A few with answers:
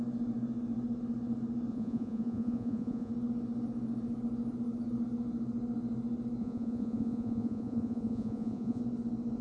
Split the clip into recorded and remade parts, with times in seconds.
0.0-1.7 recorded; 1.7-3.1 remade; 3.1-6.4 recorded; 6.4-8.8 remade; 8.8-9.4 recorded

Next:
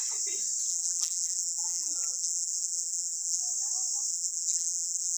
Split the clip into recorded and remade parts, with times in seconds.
0.0-0.7 recorded; 0.7-3.4 remade; 3.4-4.1 recorded; 4.1-5.2 remade